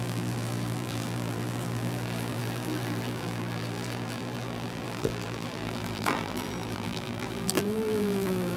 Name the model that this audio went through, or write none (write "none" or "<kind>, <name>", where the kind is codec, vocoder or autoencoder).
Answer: vocoder, BigVGAN v2